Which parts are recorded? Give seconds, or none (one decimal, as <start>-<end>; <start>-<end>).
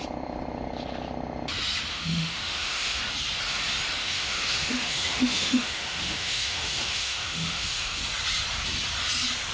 0.0-1.9; 3.0-4.0; 8.0-9.5